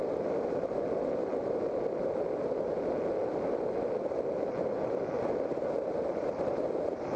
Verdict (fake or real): real